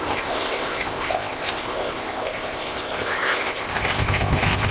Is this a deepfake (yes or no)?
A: yes